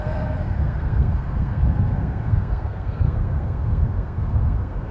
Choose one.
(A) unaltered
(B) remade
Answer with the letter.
B